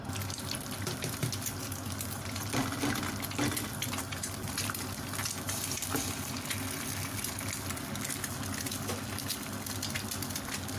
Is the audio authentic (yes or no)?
yes